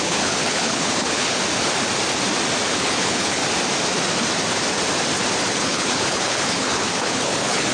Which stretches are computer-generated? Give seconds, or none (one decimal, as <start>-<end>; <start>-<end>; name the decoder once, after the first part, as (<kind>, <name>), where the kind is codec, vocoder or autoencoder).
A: 0.0-1.4 (codec, HILCodec); 2.7-3.4; 5.5-7.7